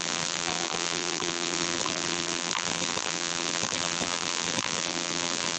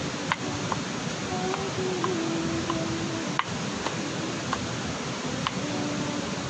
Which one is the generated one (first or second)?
first